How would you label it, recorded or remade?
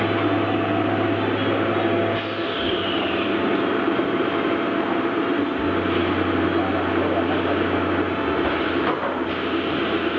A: remade